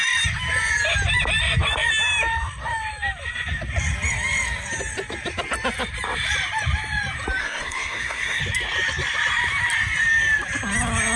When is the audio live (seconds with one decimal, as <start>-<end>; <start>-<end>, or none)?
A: 0.0-7.4; 8.4-11.2